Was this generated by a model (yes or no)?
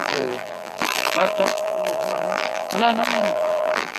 yes